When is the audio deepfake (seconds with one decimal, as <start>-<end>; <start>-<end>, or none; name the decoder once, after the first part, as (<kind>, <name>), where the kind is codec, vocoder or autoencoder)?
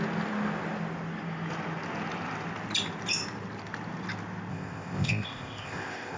4.5-6.2 (codec, ZipCodec)